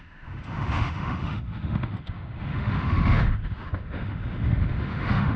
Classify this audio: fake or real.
fake